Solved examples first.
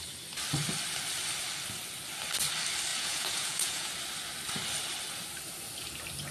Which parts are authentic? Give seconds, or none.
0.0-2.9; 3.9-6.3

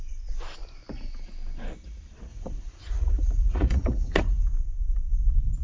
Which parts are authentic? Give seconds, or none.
0.0-2.3; 4.4-5.6

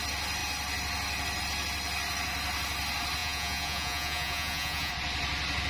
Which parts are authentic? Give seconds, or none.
0.0-3.2; 4.9-5.7

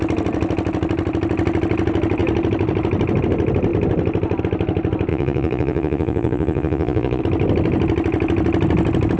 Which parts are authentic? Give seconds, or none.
0.0-5.1; 7.2-9.2

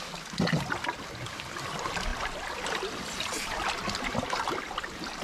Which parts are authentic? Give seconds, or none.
0.0-5.2

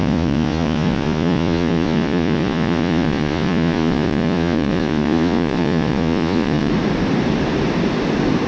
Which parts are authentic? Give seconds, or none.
6.7-8.5